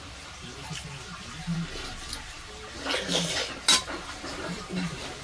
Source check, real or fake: real